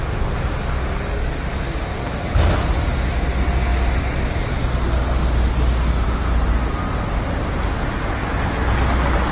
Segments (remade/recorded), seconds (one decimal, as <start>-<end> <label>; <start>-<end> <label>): 0.0-3.7 recorded; 3.7-4.5 remade; 4.5-9.3 recorded